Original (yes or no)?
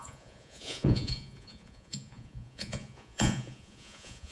no